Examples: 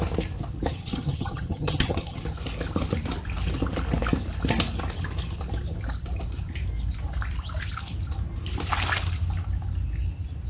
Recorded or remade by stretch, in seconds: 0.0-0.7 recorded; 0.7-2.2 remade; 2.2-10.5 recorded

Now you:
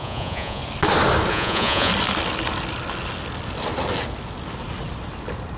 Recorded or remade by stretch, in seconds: 0.0-0.6 remade; 0.6-1.3 recorded; 1.3-1.9 remade; 1.9-5.6 recorded

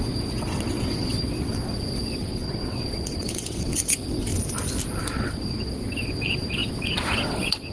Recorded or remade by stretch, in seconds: 0.0-4.3 remade; 4.3-5.0 recorded; 5.0-7.7 remade

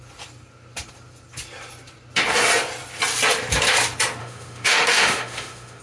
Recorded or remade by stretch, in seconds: 0.0-4.2 recorded; 4.2-5.8 remade

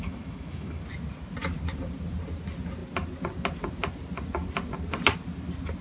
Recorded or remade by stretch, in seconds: 0.0-0.8 remade; 0.8-5.8 recorded